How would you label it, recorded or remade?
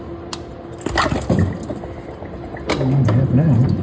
recorded